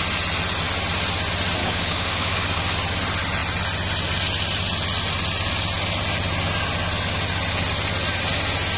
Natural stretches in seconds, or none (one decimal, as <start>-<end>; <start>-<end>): 0.0-1.6; 2.6-8.8